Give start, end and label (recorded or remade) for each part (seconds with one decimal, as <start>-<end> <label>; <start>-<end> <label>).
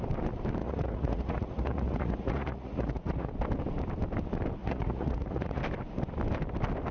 0.0-0.6 recorded; 0.6-3.3 remade; 3.3-4.6 recorded; 4.6-5.6 remade; 5.6-6.9 recorded